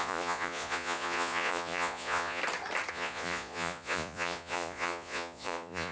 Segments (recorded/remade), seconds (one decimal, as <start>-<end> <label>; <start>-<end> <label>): 0.0-2.4 remade; 2.4-2.9 recorded; 2.9-5.9 remade